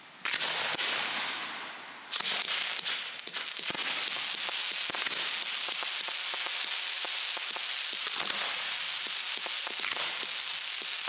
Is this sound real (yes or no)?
yes